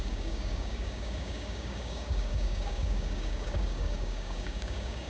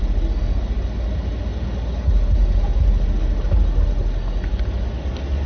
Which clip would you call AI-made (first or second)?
first